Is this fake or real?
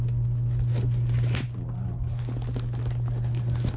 real